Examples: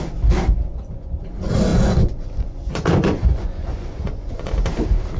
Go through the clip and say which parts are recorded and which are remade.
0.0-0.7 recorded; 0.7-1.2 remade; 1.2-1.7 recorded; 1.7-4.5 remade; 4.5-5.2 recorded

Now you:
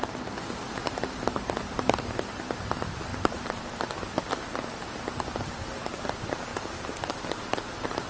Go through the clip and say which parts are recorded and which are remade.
0.0-3.1 recorded; 3.1-3.7 remade; 3.7-6.5 recorded; 6.5-7.1 remade; 7.1-8.1 recorded

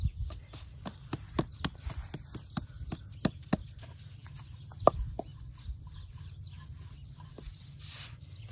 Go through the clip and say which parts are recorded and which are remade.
0.0-8.5 recorded

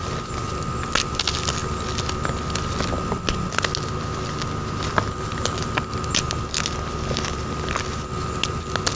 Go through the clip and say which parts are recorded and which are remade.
0.0-9.0 recorded

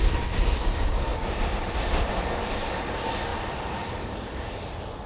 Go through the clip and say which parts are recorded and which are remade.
0.0-1.1 recorded; 1.1-2.1 remade; 2.1-3.3 recorded; 3.3-3.8 remade; 3.8-5.1 recorded

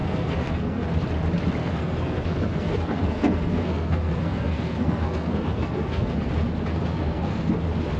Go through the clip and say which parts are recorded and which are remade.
0.0-0.9 remade; 0.9-1.6 recorded; 1.6-6.3 remade; 6.3-6.7 recorded; 6.7-7.5 remade; 7.5-8.0 recorded